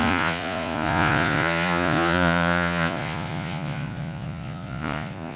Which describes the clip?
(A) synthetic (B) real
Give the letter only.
A